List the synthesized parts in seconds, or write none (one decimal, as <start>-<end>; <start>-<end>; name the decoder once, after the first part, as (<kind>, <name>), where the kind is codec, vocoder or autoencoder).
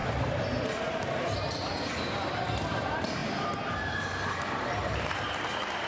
0.0-5.9 (vocoder, BigVGAN v2)